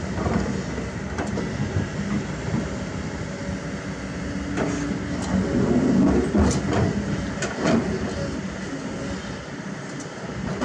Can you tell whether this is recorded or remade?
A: recorded